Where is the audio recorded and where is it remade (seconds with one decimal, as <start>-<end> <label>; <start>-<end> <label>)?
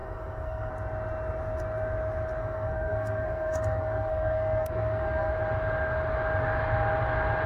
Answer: 0.0-0.7 remade; 0.7-2.4 recorded; 2.4-5.3 remade; 5.3-7.5 recorded